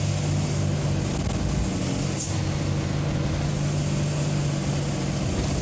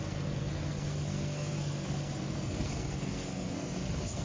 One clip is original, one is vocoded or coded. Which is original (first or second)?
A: first